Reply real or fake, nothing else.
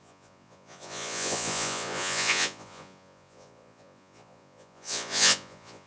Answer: fake